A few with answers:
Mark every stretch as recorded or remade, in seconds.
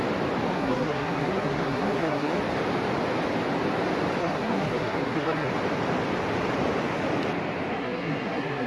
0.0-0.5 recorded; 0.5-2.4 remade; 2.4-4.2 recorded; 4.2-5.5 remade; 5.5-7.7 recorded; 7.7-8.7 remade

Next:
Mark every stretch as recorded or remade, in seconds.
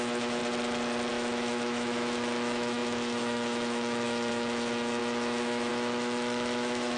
0.0-0.4 remade; 0.4-1.1 recorded; 1.1-7.0 remade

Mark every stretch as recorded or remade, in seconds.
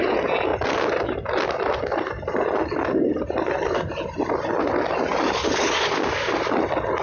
0.0-7.0 recorded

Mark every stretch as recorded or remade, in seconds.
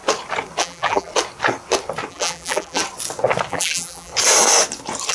0.0-0.6 recorded; 0.6-1.1 remade; 1.1-2.1 recorded; 2.1-2.8 remade; 2.8-3.5 recorded; 3.5-4.1 remade; 4.1-5.1 recorded